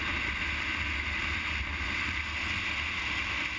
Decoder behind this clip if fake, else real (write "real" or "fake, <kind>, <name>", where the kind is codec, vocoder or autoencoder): real